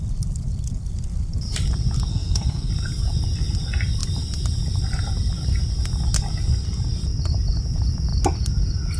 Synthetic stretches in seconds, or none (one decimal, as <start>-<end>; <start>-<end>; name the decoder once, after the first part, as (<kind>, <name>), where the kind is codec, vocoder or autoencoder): 2.1-2.7 (codec, SNAC)